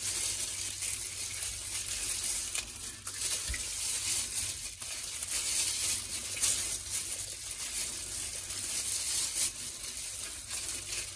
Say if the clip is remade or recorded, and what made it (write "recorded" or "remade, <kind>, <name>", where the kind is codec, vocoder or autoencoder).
recorded